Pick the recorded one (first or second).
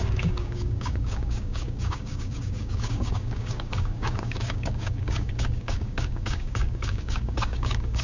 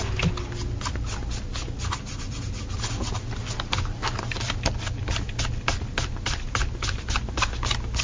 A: second